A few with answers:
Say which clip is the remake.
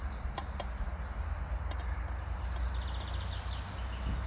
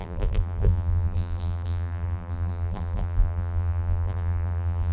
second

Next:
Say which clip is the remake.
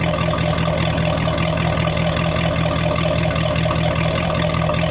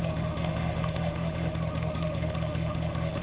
second